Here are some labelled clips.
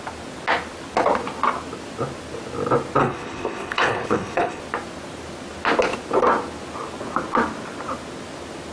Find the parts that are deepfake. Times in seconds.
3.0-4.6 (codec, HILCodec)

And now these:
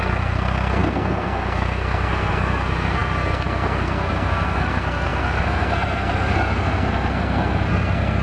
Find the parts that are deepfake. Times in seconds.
0.0-8.2 (codec, SNAC)

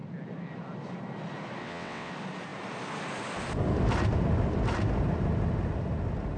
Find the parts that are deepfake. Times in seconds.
1.6-2.1 (vocoder, WaveNeXt)

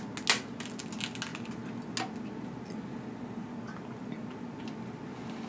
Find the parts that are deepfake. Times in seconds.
none

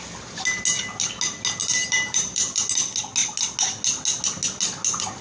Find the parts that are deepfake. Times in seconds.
1.6-2.6 (vocoder, BigVGAN v2)